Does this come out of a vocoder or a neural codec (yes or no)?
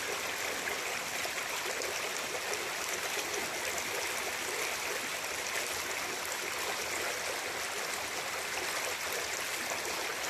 no